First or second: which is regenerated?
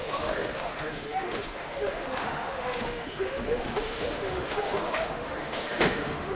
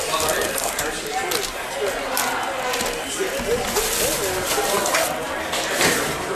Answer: first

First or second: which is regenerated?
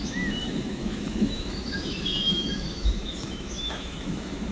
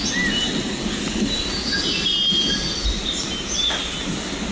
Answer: first